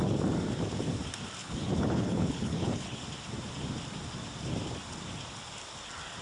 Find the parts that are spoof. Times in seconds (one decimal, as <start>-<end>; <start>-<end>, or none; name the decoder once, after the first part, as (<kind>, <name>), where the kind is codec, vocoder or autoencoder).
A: 1.4-3.0 (codec, HILCodec)